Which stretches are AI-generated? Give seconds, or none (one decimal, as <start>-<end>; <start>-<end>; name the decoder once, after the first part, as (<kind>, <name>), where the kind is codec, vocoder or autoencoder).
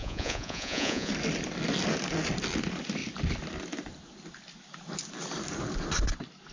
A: 0.0-1.1 (vocoder, Vocos)